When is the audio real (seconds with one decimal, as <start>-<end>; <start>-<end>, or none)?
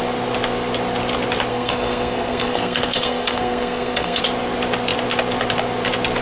0.0-1.5; 4.2-6.2